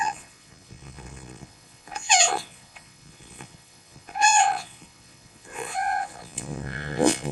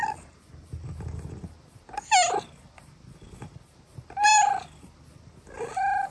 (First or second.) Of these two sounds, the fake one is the first